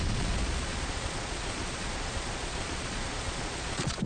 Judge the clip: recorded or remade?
remade